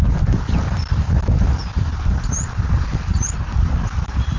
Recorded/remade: remade